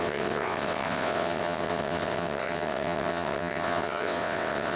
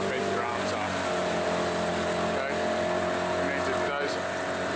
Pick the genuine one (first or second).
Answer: second